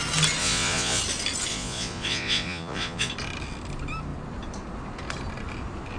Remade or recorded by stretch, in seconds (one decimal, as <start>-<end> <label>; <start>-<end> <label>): 0.0-0.4 recorded; 0.4-1.0 remade; 1.0-1.5 recorded; 1.5-3.1 remade; 3.1-6.0 recorded